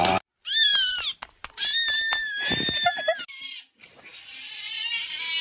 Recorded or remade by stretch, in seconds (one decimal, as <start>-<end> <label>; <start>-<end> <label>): 0.0-5.4 recorded